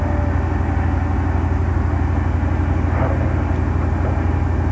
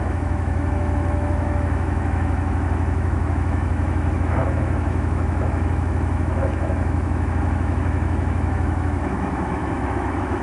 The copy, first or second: second